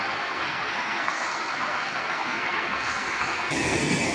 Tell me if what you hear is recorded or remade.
remade